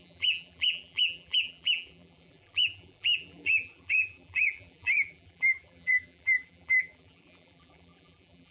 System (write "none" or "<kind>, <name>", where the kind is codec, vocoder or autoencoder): vocoder, BigVGAN v2